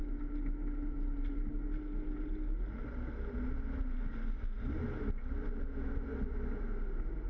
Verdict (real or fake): real